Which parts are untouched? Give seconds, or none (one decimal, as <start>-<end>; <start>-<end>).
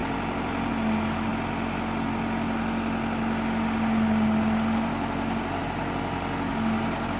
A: 0.7-7.2